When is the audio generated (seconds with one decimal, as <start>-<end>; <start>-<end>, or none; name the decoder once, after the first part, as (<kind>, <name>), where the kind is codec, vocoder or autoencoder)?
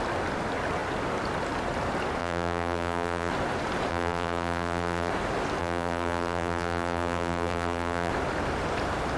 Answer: 2.2-3.3 (vocoder, BigVGAN v2); 3.9-5.1; 5.6-8.1